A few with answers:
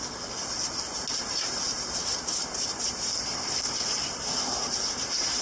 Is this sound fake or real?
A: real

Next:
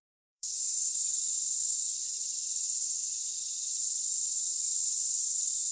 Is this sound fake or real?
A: fake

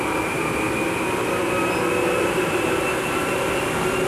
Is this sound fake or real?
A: real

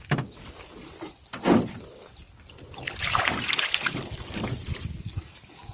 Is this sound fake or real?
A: real